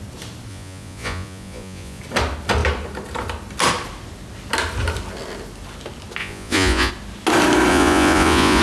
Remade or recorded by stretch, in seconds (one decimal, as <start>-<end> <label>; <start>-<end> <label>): 0.0-0.5 recorded; 0.5-2.0 remade; 2.0-6.2 recorded; 6.2-6.9 remade; 6.9-7.7 recorded; 7.7-8.6 remade